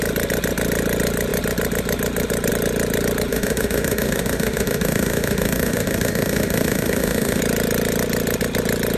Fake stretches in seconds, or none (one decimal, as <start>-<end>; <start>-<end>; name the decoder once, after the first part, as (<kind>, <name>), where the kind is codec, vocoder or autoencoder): 3.3-7.4 (autoencoder, DAC-VAE)

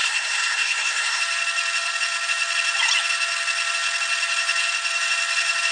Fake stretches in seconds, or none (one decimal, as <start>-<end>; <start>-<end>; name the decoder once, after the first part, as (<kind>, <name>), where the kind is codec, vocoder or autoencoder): 0.0-1.2 (codec, SNAC)